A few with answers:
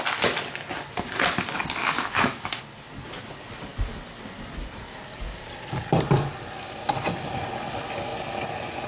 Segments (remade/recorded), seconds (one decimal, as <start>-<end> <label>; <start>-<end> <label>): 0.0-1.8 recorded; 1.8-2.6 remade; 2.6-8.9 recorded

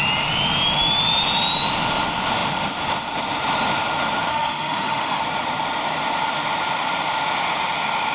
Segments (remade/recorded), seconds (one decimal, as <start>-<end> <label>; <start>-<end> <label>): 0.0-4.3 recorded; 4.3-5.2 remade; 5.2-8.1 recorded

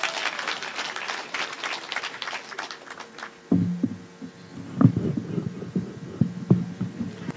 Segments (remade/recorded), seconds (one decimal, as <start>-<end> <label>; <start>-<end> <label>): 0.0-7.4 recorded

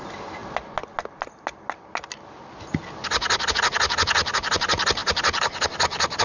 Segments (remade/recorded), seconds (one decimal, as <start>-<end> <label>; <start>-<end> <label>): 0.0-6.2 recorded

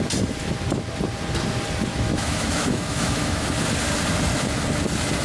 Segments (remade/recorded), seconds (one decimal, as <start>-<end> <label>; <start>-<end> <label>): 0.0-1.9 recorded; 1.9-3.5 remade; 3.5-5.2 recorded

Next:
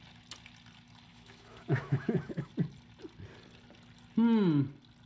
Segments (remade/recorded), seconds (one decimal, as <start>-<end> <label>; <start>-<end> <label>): 0.0-1.1 recorded; 1.1-2.5 remade; 2.5-5.1 recorded

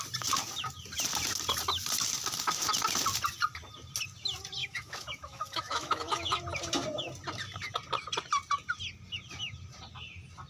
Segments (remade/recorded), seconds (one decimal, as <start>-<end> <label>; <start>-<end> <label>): 0.0-4.6 recorded; 4.6-6.4 remade; 6.4-10.5 recorded